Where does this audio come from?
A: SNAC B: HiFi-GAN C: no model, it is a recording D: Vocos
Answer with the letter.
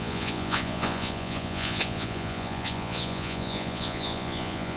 D